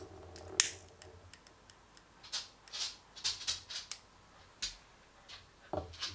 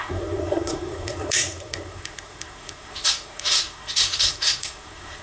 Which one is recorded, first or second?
first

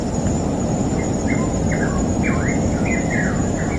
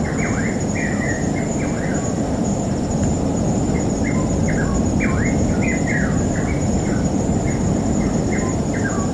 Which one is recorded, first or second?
second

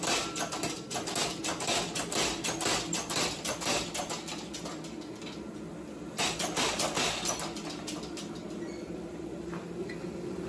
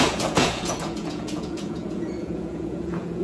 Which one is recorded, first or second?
first